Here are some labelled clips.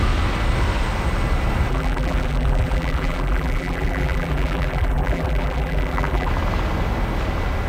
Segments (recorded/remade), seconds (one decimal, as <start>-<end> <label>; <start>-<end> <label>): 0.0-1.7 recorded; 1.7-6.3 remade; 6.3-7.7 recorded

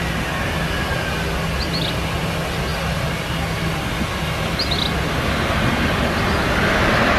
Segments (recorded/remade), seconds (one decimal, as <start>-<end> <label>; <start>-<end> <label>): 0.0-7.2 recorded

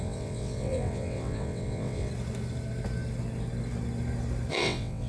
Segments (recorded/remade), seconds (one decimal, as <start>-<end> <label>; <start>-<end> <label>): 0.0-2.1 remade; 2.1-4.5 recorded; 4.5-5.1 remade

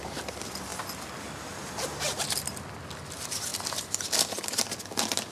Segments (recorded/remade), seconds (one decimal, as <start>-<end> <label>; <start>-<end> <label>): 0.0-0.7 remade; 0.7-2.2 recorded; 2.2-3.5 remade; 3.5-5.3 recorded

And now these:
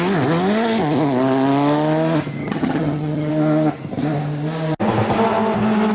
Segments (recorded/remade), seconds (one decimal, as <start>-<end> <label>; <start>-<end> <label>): 0.0-2.4 recorded; 2.4-3.3 remade; 3.3-5.9 recorded

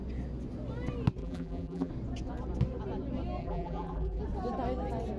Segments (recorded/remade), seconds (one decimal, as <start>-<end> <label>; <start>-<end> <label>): 0.0-1.2 recorded; 1.2-1.9 remade; 1.9-3.4 recorded; 3.4-4.2 remade; 4.2-5.2 recorded

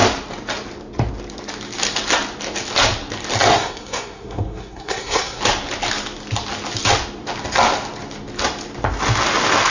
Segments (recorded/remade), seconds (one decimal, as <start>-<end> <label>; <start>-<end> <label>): 0.0-3.5 recorded; 3.5-5.4 remade; 5.4-9.7 recorded